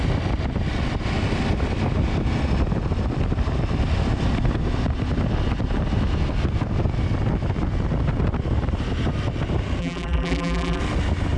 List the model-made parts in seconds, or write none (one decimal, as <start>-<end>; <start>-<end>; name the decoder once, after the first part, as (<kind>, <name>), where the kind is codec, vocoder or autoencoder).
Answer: 9.8-10.8 (vocoder, BigVGAN v2)